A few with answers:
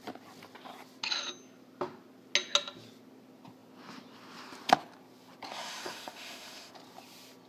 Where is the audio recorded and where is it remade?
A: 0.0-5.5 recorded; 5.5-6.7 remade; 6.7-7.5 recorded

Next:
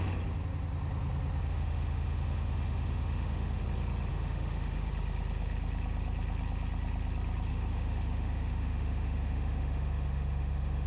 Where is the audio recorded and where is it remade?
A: 0.0-1.5 recorded; 1.5-3.6 remade; 3.6-4.1 recorded; 4.1-4.9 remade; 4.9-7.5 recorded; 7.5-10.9 remade

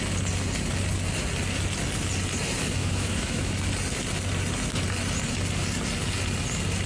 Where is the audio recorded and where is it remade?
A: 0.0-2.8 recorded; 2.8-3.5 remade; 3.5-6.9 recorded

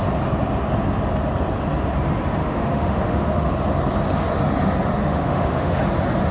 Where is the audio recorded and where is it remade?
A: 0.0-2.4 recorded; 2.4-3.5 remade; 3.5-5.0 recorded; 5.0-5.8 remade; 5.8-6.3 recorded